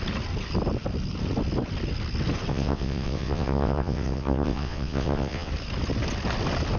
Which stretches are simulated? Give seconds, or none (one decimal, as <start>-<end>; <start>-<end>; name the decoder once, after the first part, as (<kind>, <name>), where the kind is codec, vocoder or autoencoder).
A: 2.5-5.5 (vocoder, WaveNeXt)